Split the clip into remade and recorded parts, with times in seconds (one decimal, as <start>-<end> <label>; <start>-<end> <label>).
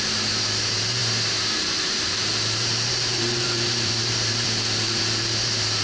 0.0-1.0 remade; 1.0-1.5 recorded; 1.5-5.8 remade